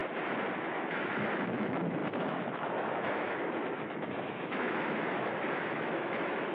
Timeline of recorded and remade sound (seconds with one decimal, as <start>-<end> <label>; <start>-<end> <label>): 0.0-0.6 recorded; 0.6-6.5 remade